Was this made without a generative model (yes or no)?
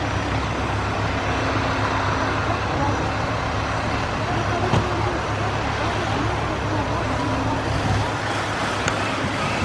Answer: yes